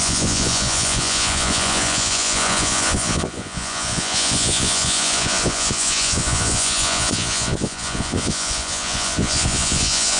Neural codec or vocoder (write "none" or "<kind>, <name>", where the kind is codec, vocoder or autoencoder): vocoder, Vocos